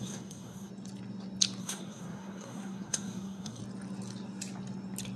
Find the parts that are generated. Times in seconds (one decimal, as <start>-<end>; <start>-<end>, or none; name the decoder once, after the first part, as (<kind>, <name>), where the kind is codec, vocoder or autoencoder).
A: 0.0-0.7 (codec, SNAC); 1.6-3.6